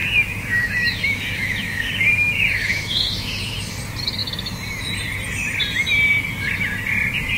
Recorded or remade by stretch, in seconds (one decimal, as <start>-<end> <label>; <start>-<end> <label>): 0.0-3.7 remade; 3.7-7.4 recorded